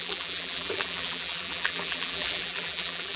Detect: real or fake fake